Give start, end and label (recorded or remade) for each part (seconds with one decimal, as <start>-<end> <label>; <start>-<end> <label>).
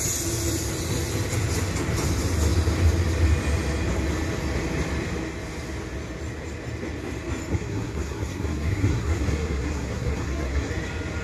0.0-7.5 recorded; 7.5-10.7 remade; 10.7-11.2 recorded